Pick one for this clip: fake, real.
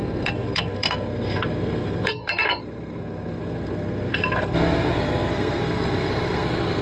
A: fake